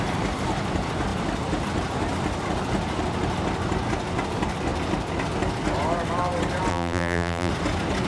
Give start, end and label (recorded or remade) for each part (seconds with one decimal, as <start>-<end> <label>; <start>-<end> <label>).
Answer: 0.0-6.7 recorded; 6.7-7.5 remade; 7.5-8.1 recorded